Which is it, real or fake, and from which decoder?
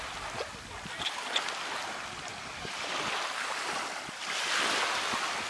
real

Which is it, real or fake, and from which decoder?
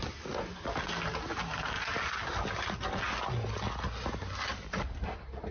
real